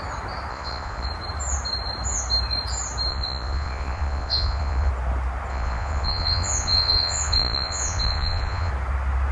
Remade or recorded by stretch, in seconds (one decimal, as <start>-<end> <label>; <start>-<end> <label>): 0.0-0.5 recorded; 0.5-1.1 remade; 1.1-3.1 recorded; 3.1-4.9 remade; 4.9-5.5 recorded; 5.5-8.7 remade; 8.7-9.3 recorded